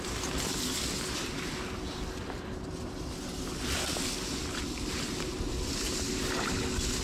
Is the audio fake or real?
real